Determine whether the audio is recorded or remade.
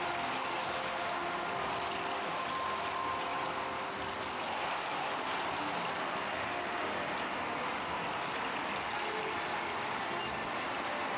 recorded